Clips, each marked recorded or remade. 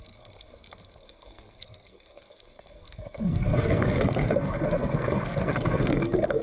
remade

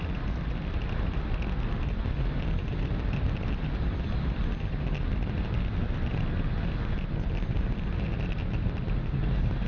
recorded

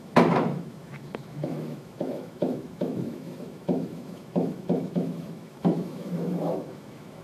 remade